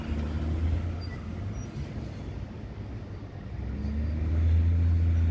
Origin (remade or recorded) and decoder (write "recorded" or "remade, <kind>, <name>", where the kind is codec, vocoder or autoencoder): recorded